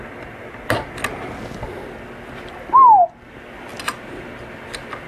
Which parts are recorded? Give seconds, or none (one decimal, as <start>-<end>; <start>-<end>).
0.0-5.1